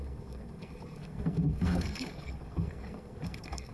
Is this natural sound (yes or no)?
no